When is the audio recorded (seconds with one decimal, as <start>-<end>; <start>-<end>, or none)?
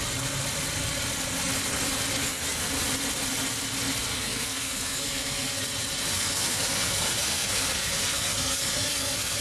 0.0-2.2; 2.7-4.1; 5.6-6.1